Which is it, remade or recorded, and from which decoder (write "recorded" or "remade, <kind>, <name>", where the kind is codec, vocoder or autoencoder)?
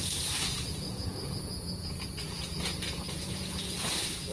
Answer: remade, vocoder, Vocos